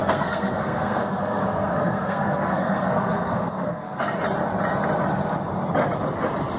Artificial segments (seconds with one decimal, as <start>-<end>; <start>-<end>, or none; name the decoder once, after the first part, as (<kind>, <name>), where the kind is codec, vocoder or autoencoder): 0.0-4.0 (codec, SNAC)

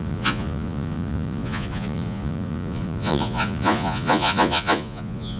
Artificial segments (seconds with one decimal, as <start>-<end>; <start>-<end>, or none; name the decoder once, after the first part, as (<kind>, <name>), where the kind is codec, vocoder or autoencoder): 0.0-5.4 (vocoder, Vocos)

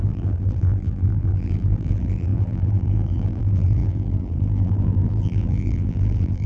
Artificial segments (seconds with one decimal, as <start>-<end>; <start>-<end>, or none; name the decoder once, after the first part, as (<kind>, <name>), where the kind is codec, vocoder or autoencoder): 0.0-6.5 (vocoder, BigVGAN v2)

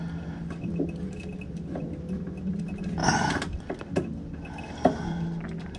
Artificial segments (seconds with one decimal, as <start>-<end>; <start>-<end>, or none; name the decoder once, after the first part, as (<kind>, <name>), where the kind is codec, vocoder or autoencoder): none

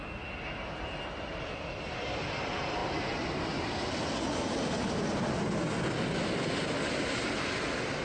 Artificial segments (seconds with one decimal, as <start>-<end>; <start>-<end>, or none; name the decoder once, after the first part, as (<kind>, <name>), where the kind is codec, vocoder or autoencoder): none

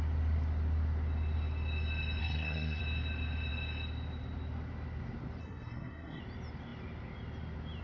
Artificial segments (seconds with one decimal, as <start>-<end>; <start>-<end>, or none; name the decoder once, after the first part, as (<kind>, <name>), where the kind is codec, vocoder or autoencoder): 2.2-2.8 (codec, SNAC); 5.4-6.2

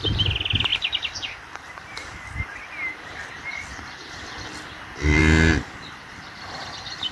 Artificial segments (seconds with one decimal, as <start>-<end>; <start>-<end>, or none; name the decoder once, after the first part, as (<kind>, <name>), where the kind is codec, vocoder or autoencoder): 0.7-3.3 (vocoder, BigVGAN v2); 3.7-5.2